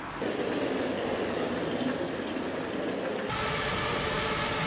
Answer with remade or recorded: recorded